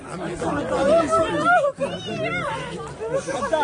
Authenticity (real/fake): real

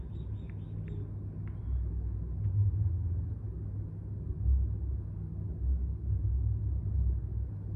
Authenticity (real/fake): real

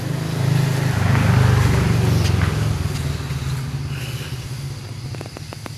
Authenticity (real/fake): real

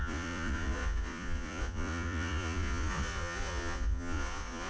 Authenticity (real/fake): fake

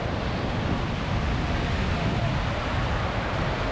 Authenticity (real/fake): real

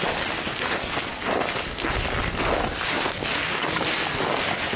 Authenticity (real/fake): real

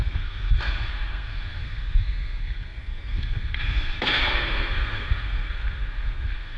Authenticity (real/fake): fake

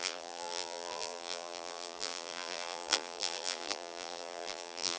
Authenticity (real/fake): fake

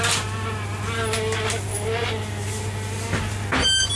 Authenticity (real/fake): real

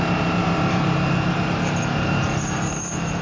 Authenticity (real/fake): fake